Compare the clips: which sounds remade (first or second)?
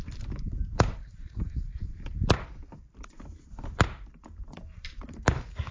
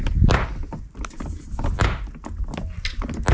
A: first